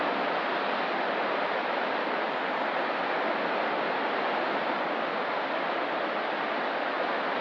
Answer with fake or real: real